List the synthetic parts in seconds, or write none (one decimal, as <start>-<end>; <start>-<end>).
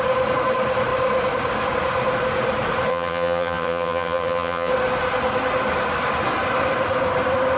2.9-4.7